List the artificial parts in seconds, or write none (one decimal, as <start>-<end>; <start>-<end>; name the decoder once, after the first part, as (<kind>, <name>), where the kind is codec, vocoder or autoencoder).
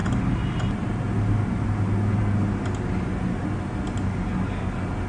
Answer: none